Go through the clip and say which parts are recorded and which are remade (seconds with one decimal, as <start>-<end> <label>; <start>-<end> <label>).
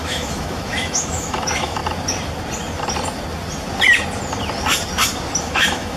0.0-1.8 remade; 1.8-5.4 recorded; 5.4-6.0 remade